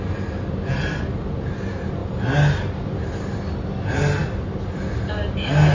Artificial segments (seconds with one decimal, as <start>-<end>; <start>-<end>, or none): none